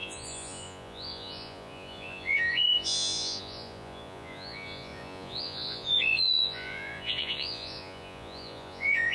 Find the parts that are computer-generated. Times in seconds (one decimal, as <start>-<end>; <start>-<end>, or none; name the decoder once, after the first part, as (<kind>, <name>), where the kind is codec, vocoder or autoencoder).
0.0-9.1 (vocoder, Vocos)